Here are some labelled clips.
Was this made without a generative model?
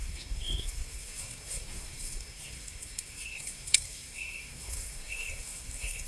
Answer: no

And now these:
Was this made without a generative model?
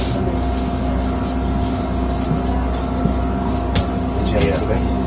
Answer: yes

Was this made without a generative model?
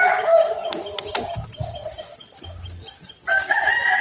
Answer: yes